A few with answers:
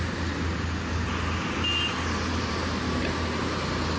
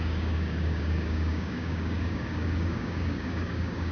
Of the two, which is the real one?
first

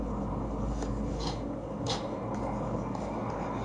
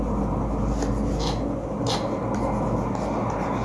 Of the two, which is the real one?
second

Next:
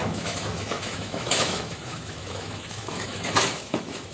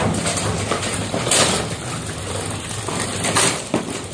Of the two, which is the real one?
second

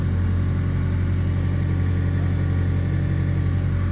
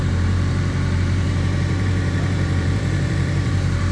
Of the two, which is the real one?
first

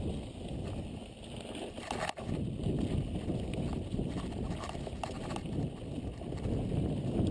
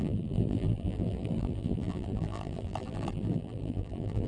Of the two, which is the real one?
first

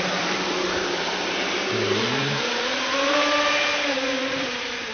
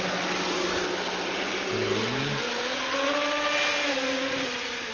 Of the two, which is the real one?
second